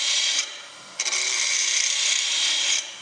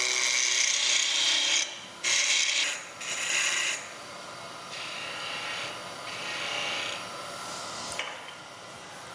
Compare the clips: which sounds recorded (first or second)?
second